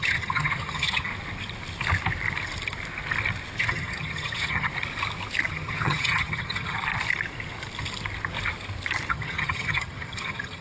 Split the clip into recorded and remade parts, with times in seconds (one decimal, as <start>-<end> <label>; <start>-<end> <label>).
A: 0.0-1.1 remade; 1.1-3.6 recorded; 3.6-4.7 remade; 4.7-5.5 recorded; 5.5-6.9 remade; 6.9-9.1 recorded; 9.1-10.6 remade